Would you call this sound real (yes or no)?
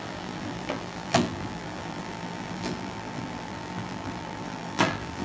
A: no